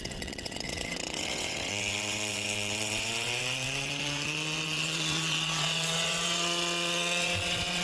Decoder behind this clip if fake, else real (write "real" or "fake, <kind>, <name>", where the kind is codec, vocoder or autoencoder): fake, vocoder, WaveNeXt